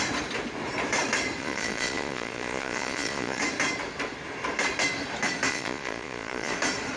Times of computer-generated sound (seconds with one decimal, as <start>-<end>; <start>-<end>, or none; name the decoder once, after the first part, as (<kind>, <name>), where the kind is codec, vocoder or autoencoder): 1.4-3.4 (vocoder, Vocos); 5.5-6.5